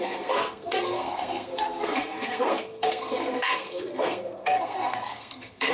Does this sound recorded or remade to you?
remade